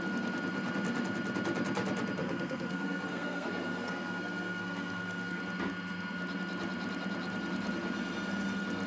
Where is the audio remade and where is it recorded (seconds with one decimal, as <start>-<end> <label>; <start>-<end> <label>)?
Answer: 0.0-2.2 recorded; 2.2-5.4 remade; 5.4-8.9 recorded